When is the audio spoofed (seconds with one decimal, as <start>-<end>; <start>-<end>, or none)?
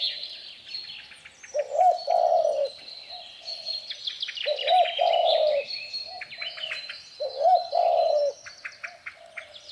5.2-7.2